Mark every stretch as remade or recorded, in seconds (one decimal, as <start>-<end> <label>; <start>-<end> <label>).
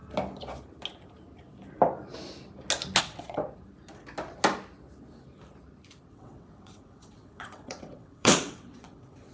0.0-3.0 recorded; 3.0-3.4 remade; 3.4-6.1 recorded; 6.1-9.3 remade